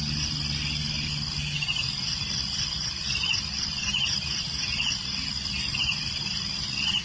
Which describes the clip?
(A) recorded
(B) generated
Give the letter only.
A